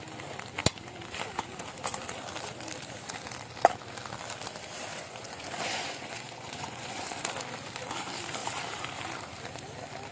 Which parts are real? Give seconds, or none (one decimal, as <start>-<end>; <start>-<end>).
0.0-4.9; 7.2-10.1